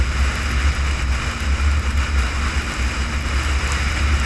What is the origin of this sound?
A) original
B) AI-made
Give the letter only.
A